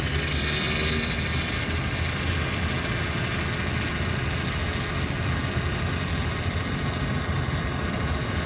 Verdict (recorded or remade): recorded